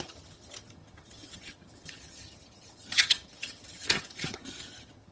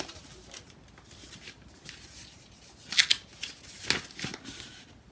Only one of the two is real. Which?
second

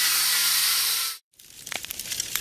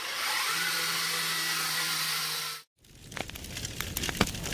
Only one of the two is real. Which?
second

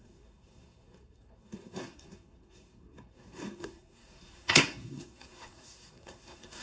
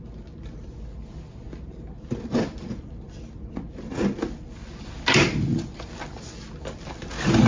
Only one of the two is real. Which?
second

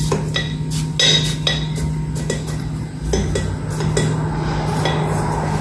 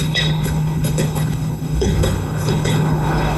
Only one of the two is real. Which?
first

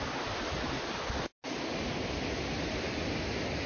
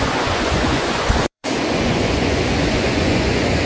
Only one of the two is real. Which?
first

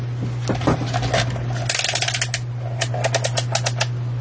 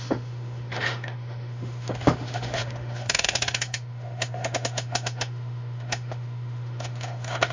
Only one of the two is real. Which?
first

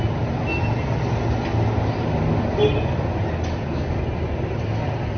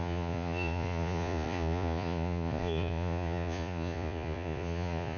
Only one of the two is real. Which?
first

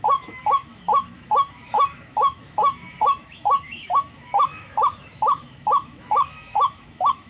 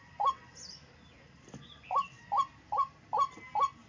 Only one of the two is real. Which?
second